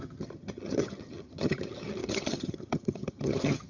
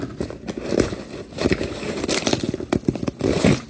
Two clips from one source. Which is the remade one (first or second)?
first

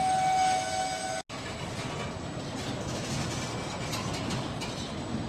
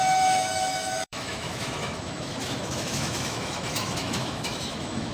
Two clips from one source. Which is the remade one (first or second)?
second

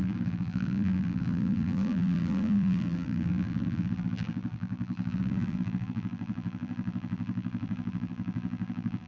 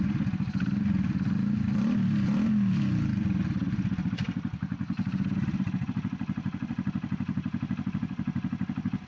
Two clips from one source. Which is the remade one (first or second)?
first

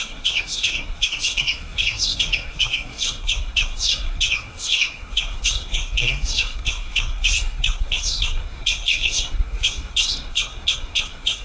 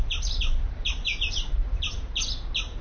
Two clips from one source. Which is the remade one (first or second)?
first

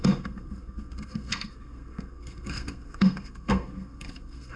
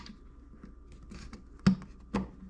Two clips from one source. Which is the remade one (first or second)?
first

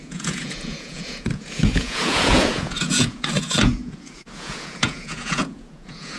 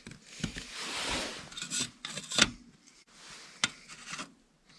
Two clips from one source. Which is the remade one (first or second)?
first